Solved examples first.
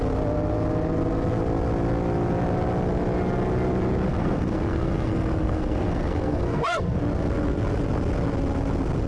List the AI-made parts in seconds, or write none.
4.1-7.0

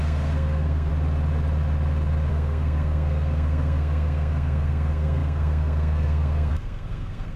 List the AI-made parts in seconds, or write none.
0.0-0.9; 2.3-7.4

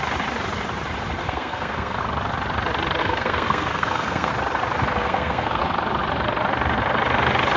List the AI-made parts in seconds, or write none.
1.2-2.0; 3.0-4.3; 5.0-5.6

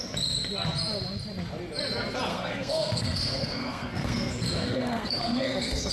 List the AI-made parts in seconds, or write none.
2.3-5.9

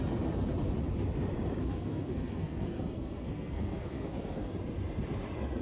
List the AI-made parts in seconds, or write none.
1.6-4.5